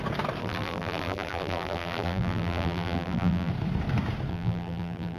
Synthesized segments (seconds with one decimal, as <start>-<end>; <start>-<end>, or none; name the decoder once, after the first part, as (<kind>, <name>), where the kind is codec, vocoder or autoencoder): 0.4-3.5 (vocoder, BigVGAN v2); 4.3-5.2